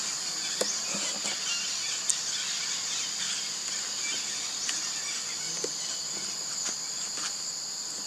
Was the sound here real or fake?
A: real